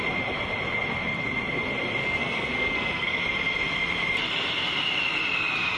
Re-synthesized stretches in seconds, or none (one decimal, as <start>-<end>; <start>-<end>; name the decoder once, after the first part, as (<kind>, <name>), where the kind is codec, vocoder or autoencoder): 2.0-3.2 (codec, SNAC)